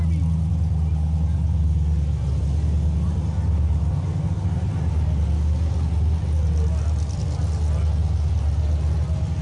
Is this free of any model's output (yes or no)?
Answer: yes